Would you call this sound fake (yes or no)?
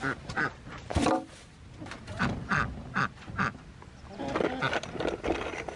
no